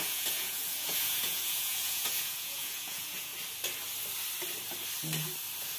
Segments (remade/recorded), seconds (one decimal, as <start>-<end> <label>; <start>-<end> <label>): 0.0-3.3 remade; 3.3-5.8 recorded